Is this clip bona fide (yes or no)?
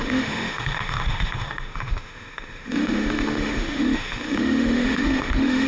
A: no